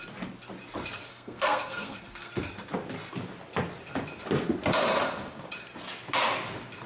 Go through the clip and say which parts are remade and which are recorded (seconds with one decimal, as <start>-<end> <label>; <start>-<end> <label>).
0.0-1.1 recorded; 1.1-2.3 remade; 2.3-6.9 recorded